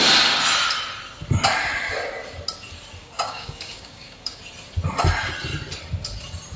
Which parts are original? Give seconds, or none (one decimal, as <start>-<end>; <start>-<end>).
0.0-3.0; 4.4-6.6